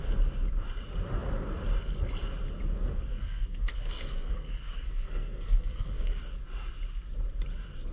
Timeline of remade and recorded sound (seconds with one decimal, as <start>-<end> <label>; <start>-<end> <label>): 0.0-3.1 recorded; 3.1-6.2 remade; 6.2-7.9 recorded